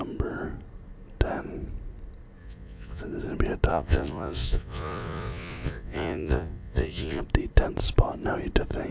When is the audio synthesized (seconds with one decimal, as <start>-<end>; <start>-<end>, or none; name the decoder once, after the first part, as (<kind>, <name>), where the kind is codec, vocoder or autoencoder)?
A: 2.4-3.0 (vocoder, Vocos); 3.7-7.2